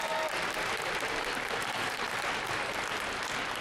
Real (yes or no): yes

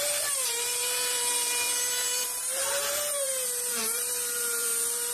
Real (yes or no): no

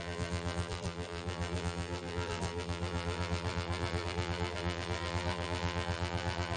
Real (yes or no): no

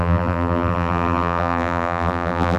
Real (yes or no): no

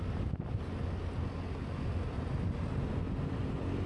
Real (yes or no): yes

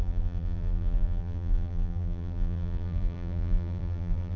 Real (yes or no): no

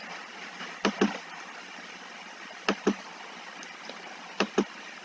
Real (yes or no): yes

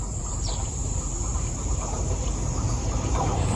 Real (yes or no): no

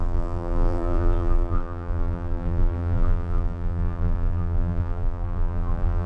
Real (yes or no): no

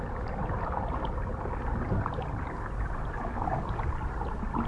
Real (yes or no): yes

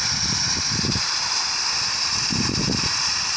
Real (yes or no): no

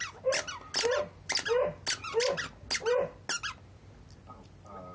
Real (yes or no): yes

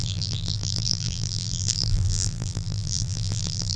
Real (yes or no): no